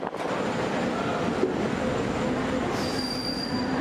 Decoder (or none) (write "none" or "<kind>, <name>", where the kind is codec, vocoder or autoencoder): none